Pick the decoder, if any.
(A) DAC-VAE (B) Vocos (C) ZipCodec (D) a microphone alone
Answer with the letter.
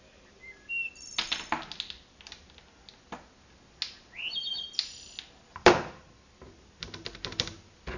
D